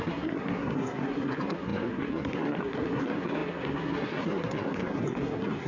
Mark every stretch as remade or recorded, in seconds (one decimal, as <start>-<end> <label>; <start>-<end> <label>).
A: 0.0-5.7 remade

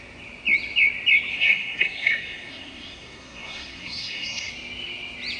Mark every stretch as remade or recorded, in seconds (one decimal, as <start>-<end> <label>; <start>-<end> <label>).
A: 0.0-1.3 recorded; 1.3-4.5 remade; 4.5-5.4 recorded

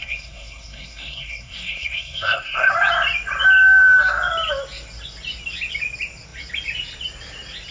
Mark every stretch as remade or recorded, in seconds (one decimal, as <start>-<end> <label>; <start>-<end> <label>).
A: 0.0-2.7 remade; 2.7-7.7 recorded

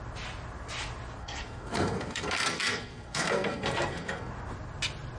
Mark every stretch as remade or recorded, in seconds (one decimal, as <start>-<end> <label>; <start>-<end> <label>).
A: 0.0-1.2 recorded; 1.2-4.3 remade; 4.3-5.2 recorded

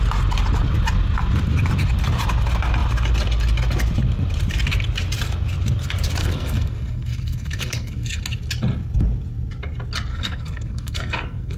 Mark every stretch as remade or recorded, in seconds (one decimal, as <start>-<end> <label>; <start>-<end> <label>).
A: 0.0-6.2 recorded; 6.2-8.2 remade; 8.2-10.1 recorded; 10.1-11.6 remade

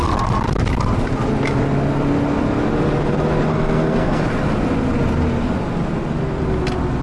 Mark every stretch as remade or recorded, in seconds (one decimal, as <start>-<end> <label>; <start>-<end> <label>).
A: 0.0-3.5 recorded; 3.5-4.2 remade; 4.2-7.0 recorded